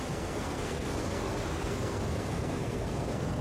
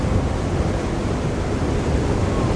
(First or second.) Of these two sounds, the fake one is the first